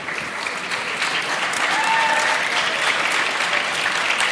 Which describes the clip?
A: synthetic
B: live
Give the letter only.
B